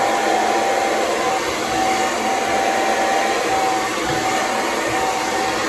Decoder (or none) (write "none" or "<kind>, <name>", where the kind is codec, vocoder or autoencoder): none